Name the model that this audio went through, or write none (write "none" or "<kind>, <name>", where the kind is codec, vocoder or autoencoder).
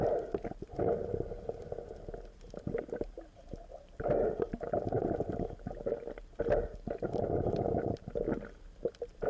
none